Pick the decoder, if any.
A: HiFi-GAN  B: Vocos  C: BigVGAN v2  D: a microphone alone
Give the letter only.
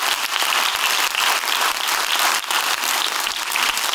C